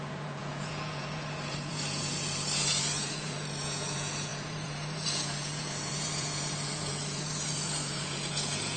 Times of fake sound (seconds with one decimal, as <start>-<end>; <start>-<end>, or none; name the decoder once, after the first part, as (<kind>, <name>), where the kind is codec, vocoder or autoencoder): 0.0-8.8 (vocoder, Vocos)